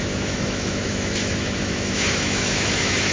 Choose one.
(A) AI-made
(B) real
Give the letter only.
A